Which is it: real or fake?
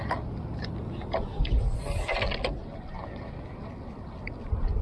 real